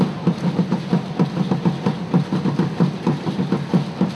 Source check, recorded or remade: recorded